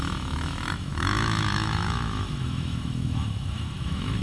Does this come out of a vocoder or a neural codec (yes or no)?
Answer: yes